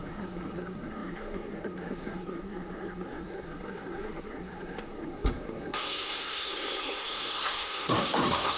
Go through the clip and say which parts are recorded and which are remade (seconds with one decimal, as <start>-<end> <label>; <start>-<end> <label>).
0.0-8.6 remade